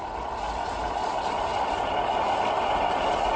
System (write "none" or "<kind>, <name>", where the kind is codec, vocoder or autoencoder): none